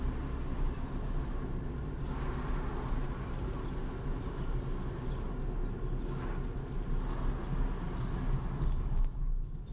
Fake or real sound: real